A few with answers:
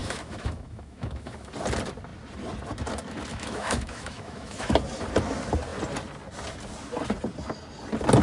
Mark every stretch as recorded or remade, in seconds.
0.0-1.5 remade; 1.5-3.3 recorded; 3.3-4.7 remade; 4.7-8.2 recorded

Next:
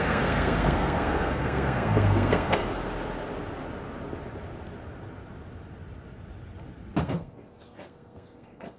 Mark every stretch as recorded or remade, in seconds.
0.0-2.6 remade; 2.6-7.0 recorded; 7.0-8.8 remade

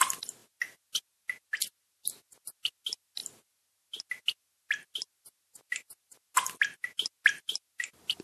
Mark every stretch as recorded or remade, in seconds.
0.0-8.2 recorded